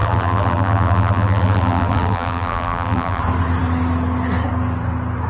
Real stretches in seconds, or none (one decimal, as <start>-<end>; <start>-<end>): 3.2-5.3